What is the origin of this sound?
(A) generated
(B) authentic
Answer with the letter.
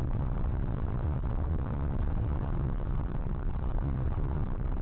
A